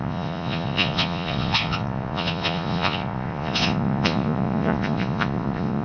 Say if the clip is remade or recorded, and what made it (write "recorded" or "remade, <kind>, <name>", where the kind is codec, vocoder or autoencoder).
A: remade, vocoder, Vocos